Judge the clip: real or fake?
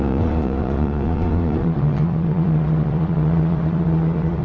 fake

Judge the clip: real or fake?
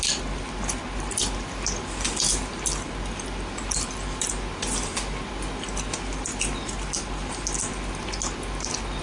real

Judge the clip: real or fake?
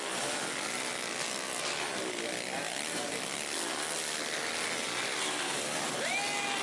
real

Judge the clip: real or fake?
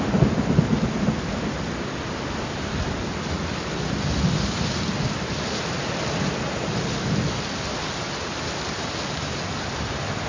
real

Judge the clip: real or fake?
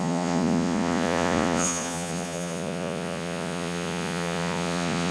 fake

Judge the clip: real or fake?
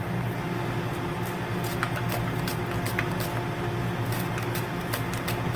real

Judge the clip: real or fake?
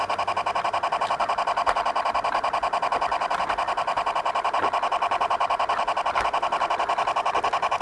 real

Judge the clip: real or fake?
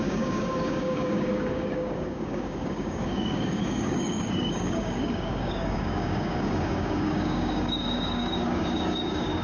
fake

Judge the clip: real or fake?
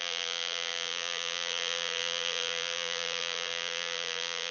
fake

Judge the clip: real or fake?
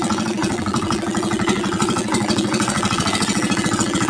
fake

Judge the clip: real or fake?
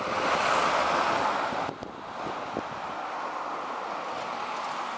real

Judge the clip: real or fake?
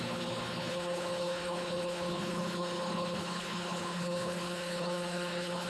fake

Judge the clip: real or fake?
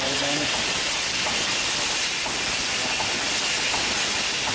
real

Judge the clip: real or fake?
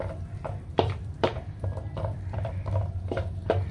fake